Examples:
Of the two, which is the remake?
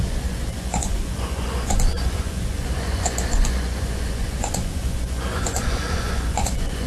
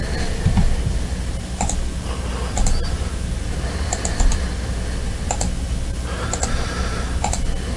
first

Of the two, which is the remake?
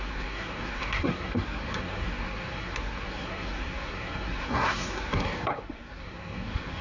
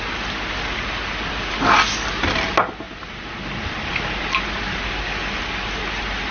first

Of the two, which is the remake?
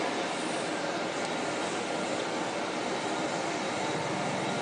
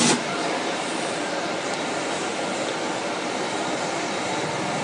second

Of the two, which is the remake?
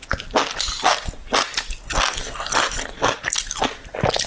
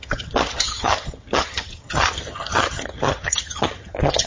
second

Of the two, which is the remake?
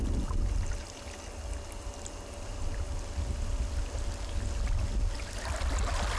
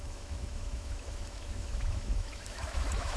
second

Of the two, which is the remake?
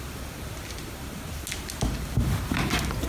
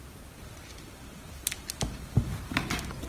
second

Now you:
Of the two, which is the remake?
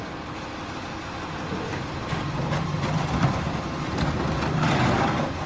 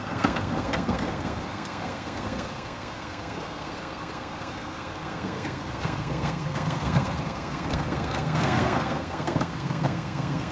second